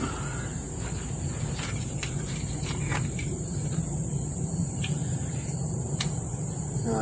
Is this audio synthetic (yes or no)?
yes